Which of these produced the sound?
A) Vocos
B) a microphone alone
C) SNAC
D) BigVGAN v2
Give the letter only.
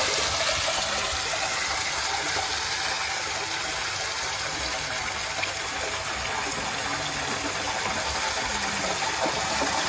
B